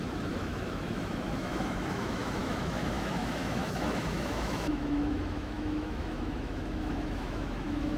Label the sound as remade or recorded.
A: remade